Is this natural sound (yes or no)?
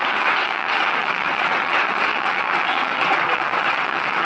no